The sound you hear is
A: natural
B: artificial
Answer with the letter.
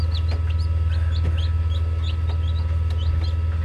A